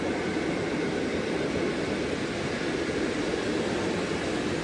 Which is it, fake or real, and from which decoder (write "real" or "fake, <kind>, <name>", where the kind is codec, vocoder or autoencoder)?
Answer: fake, vocoder, BigVGAN v2